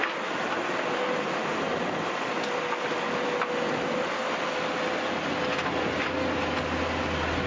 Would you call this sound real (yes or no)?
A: yes